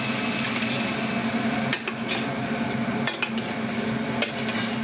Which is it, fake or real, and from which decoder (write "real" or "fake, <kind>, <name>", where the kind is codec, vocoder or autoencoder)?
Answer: real